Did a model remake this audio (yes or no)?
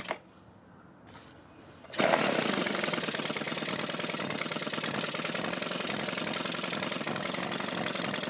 no